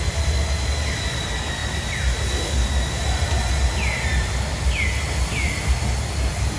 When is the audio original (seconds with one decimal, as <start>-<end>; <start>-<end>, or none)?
0.0-6.6